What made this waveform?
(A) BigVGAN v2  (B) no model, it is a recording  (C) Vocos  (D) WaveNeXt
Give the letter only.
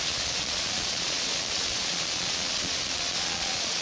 C